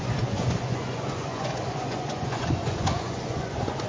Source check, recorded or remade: remade